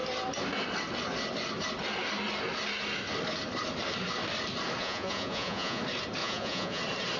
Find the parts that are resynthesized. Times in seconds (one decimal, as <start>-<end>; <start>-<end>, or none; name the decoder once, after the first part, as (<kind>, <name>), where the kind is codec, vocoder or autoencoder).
4.8-5.8 (vocoder, Vocos); 6.2-6.8